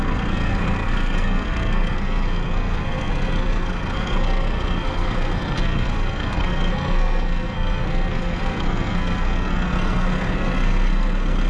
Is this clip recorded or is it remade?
remade